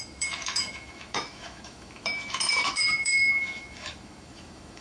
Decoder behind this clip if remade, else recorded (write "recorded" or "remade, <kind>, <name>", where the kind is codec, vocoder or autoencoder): remade, autoencoder, DAC-VAE